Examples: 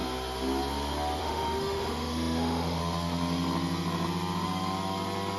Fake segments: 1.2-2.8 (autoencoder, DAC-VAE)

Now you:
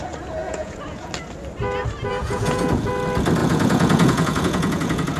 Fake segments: 0.4-1.1 (vocoder, Vocos); 2.1-2.9; 3.4-5.2

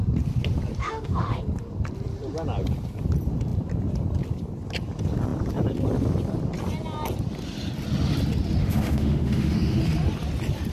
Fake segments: 0.8-1.4 (autoencoder, DAC-VAE); 8.6-9.8

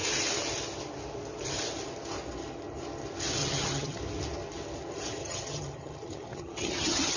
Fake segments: 3.4-4.0 (vocoder, HiFi-GAN); 5.2-7.2